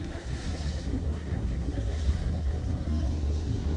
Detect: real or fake fake